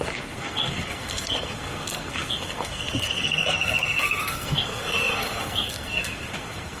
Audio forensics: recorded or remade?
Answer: remade